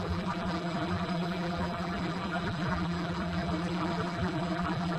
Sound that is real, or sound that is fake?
fake